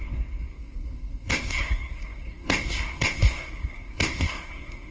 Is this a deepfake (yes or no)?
yes